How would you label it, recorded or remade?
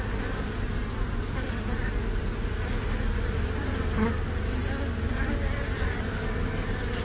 recorded